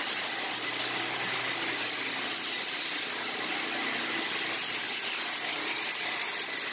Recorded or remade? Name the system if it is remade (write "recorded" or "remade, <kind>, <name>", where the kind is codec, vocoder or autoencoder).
recorded